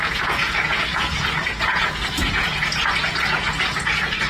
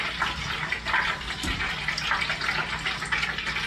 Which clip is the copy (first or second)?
first